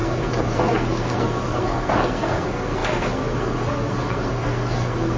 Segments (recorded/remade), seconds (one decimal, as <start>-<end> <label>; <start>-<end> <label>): 0.0-5.2 remade